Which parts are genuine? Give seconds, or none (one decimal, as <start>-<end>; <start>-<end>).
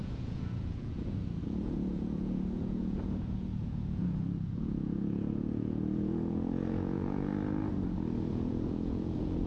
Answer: 7.3-8.3